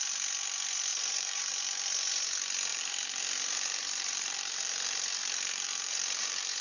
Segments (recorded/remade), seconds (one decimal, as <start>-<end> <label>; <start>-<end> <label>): 0.0-0.9 recorded; 0.9-1.5 remade; 1.5-2.7 recorded; 2.7-6.6 remade